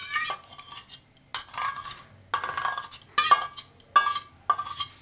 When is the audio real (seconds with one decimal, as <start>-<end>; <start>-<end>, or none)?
0.0-5.0

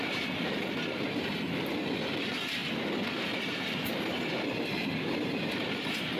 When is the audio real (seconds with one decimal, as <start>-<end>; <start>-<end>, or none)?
0.0-2.6; 3.9-6.2

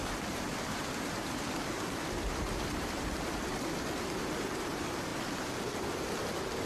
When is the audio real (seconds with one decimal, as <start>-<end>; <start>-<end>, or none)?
4.0-6.7

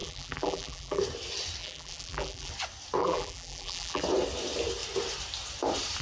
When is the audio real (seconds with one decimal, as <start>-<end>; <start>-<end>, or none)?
1.0-1.6; 2.5-3.0; 4.0-6.0

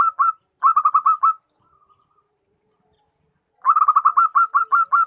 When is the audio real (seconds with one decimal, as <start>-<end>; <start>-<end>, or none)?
0.0-5.1